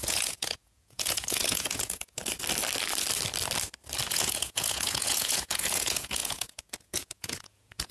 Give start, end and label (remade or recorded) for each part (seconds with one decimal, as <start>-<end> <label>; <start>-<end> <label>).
0.0-2.2 remade; 2.2-4.1 recorded; 4.1-7.9 remade